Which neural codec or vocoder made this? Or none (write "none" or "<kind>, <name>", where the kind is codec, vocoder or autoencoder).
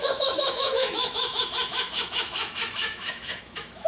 autoencoder, DAC-VAE